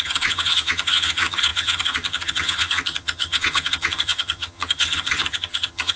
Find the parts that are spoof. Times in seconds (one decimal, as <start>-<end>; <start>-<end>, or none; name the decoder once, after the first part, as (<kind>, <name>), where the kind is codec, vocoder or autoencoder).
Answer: 0.0-6.0 (vocoder, HiFi-GAN)